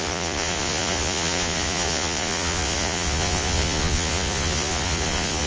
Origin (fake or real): fake